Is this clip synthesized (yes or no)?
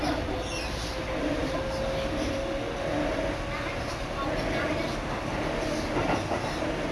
no